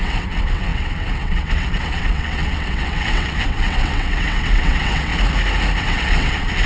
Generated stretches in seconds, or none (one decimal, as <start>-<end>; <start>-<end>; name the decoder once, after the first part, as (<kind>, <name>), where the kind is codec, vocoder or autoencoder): 0.0-5.1 (vocoder, WaveNeXt); 5.8-6.7